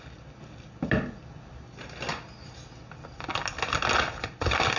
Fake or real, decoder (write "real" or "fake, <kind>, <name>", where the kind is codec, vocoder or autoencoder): real